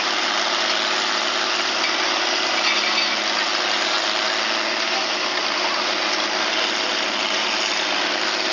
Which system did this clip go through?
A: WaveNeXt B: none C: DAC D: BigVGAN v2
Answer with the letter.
B